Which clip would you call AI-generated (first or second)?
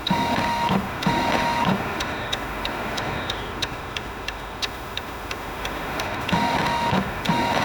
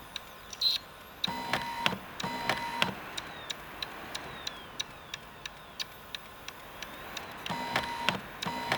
first